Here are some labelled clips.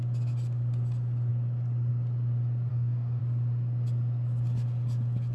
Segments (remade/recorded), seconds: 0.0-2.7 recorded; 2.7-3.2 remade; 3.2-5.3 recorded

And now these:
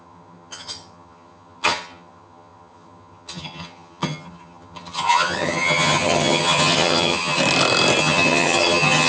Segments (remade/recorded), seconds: 0.0-7.4 remade; 7.4-8.0 recorded; 8.0-9.1 remade

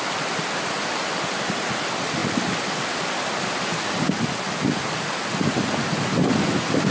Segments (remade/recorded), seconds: 0.0-6.9 recorded

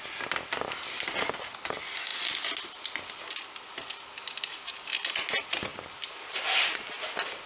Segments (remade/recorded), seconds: 0.0-7.5 recorded

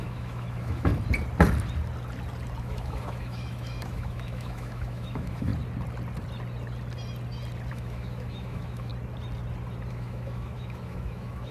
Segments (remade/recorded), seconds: 0.0-0.9 remade; 0.9-2.6 recorded; 2.6-5.5 remade; 5.5-7.7 recorded; 7.7-8.9 remade; 8.9-9.9 recorded; 9.9-11.5 remade

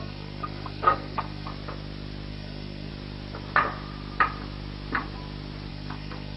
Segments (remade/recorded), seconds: 0.0-1.5 remade; 1.5-2.3 recorded; 2.3-2.9 remade; 2.9-5.7 recorded; 5.7-6.4 remade

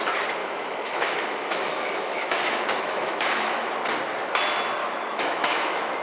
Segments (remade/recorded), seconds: 0.0-0.4 recorded; 0.4-3.7 remade; 3.7-4.8 recorded; 4.8-6.0 remade

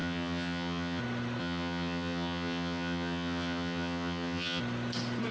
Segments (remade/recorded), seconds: 0.0-1.0 remade; 1.0-1.4 recorded; 1.4-4.6 remade; 4.6-5.3 recorded